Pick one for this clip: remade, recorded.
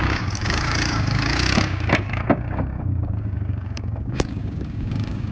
remade